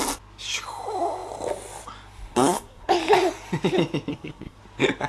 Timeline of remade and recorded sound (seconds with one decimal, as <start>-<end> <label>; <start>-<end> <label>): 0.0-2.3 recorded; 2.3-2.9 remade; 2.9-4.1 recorded; 4.1-4.6 remade; 4.6-5.1 recorded